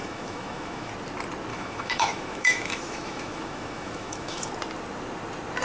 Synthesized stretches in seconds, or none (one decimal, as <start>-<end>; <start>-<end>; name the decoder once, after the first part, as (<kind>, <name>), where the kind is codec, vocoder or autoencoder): 0.0-0.9 (autoencoder, DAC-VAE); 1.5-4.5